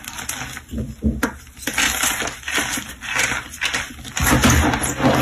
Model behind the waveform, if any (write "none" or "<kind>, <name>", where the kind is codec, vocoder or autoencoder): none